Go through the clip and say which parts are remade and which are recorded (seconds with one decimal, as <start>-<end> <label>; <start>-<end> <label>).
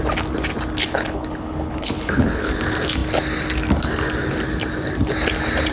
0.0-0.8 recorded; 0.8-2.5 remade; 2.5-5.7 recorded